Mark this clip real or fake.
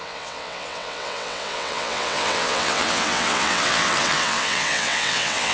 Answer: fake